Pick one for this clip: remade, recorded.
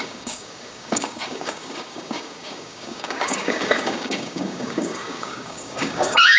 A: remade